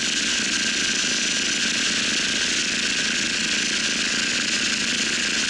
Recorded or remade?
recorded